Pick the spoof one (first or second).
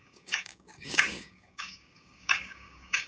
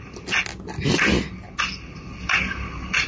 first